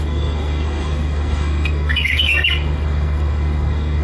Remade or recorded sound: remade